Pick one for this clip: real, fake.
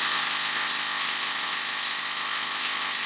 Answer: fake